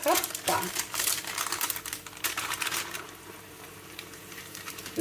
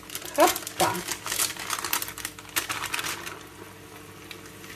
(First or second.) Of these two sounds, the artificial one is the first